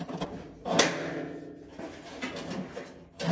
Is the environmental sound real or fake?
real